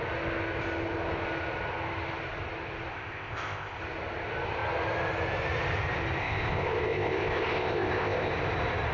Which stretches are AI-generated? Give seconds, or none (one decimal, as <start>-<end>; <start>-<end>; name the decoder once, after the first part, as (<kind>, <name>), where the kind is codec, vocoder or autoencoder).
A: 2.9-3.8 (codec, ZipCodec); 6.2-8.3